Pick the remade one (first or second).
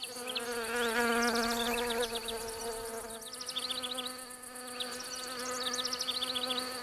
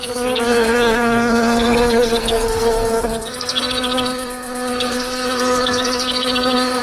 second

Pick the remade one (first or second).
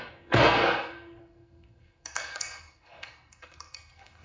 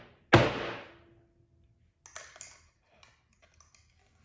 first